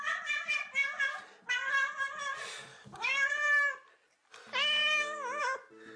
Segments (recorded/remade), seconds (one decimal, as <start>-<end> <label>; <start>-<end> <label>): 0.0-2.7 recorded; 2.7-3.3 remade; 3.3-6.0 recorded